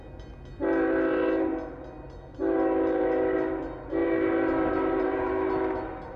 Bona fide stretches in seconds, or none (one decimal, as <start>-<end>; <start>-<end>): 0.0-4.0; 5.3-6.2